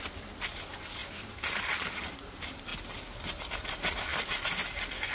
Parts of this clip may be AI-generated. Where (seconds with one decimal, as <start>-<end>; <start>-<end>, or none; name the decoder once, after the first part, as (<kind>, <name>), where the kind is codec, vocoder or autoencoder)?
0.0-2.7 (vocoder, BigVGAN v2); 3.5-4.1